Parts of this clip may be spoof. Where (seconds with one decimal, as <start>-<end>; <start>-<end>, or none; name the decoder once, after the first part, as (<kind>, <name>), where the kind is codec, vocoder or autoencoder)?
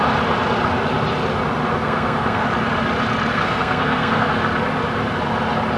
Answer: 1.7-2.4 (codec, SNAC); 3.3-4.3